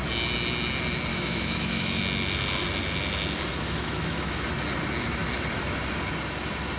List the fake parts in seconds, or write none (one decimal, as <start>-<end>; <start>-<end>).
1.1-2.0; 3.5-4.5